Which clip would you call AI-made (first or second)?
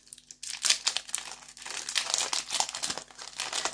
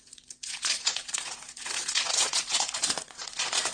second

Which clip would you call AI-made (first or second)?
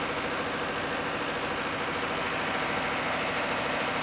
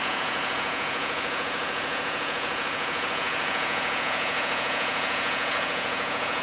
second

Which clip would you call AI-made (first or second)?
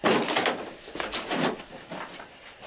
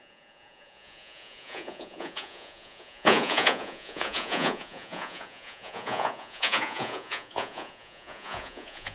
second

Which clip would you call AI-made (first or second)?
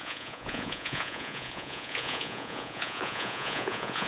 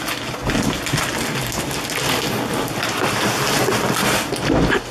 first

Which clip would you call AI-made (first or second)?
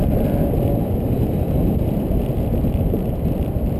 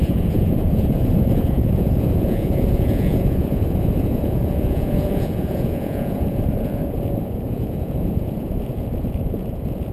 second